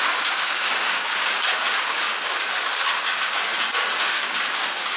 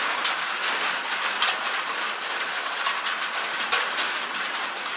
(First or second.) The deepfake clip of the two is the first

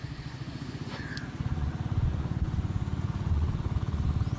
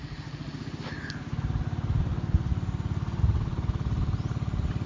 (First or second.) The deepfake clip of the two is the first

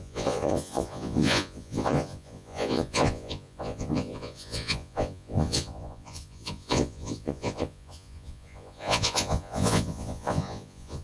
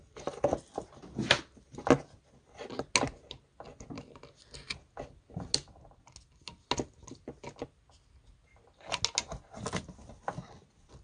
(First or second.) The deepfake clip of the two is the first